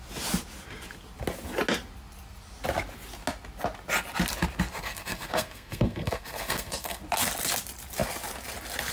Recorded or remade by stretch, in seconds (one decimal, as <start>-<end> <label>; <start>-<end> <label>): 0.0-4.7 recorded; 4.7-7.0 remade; 7.0-8.9 recorded